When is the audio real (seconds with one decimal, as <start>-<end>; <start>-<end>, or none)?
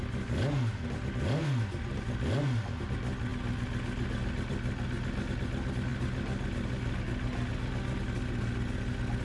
0.0-9.2